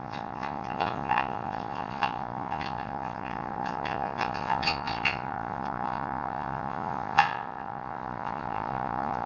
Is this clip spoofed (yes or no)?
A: yes